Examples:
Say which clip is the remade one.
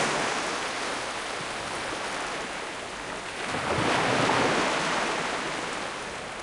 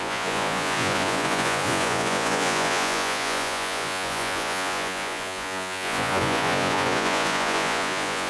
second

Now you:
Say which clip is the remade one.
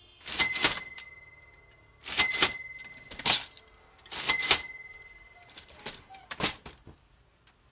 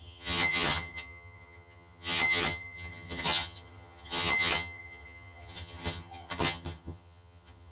second